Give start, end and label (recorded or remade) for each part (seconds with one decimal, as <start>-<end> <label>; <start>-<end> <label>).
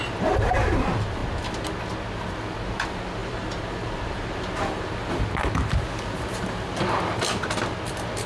0.0-3.2 recorded; 3.2-5.2 remade; 5.2-8.3 recorded